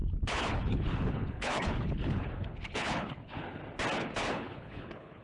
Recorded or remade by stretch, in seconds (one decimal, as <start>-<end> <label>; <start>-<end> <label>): 0.0-3.6 remade; 3.6-4.2 recorded; 4.2-5.2 remade